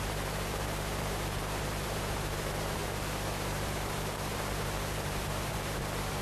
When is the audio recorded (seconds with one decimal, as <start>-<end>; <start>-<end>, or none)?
none